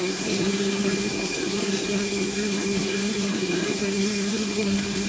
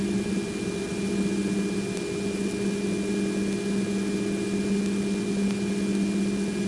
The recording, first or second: second